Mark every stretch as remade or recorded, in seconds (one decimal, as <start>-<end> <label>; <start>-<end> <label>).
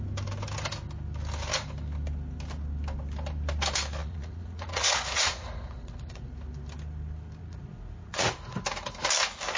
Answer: 0.0-4.0 recorded; 4.0-6.3 remade; 6.3-7.4 recorded; 7.4-8.6 remade; 8.6-9.6 recorded